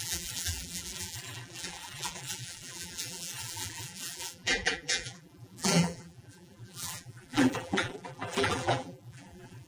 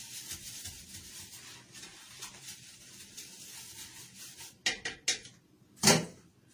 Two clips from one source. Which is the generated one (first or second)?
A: first